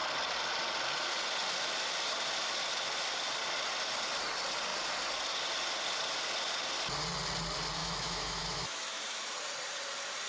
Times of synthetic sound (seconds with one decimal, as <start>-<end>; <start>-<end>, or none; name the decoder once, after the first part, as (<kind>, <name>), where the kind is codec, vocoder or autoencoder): 7.8-9.3 (autoencoder, DAC-VAE)

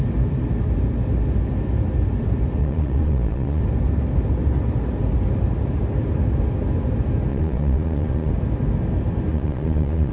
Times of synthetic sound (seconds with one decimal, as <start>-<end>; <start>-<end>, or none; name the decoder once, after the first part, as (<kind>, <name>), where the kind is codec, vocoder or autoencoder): 2.6-3.6 (vocoder, Vocos); 7.3-8.3; 9.3-10.1

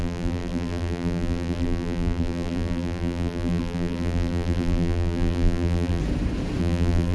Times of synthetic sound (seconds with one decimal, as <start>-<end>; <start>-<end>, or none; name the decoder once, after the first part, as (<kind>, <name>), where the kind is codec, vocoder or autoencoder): 0.0-6.0 (vocoder, BigVGAN v2); 6.6-7.1

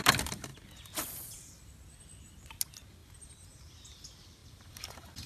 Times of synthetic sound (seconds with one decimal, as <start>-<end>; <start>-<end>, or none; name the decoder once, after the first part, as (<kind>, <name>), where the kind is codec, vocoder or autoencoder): 3.0-3.6 (vocoder, BigVGAN v2); 4.4-5.3

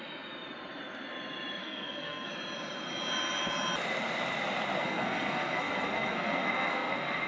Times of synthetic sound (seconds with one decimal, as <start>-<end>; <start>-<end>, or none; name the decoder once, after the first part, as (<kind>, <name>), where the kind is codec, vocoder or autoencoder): 1.6-2.3 (codec, SNAC); 4.8-7.3

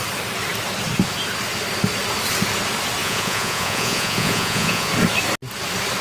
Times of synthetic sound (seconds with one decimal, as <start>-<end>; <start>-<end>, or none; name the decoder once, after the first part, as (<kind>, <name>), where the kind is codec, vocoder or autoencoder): 3.0-4.9 (vocoder, Vocos)

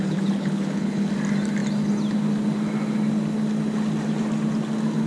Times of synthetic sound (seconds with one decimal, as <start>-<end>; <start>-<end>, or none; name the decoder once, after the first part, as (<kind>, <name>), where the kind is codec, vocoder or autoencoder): 0.0-1.1 (codec, HILCodec)

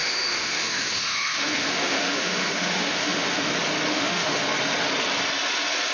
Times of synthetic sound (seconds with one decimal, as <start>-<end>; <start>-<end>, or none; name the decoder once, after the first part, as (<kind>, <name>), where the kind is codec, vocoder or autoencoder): 0.0-3.5 (autoencoder, DAC-VAE); 3.9-4.4